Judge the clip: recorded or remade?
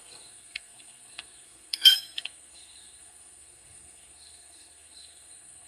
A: remade